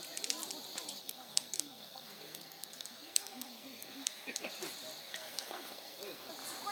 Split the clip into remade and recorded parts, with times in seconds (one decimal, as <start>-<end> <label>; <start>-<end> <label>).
0.0-1.0 recorded; 1.0-4.5 remade; 4.5-5.0 recorded; 5.0-6.3 remade; 6.3-6.7 recorded